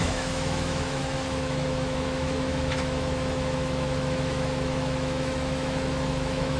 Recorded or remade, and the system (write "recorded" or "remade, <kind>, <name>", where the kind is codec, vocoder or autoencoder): remade, autoencoder, DAC-VAE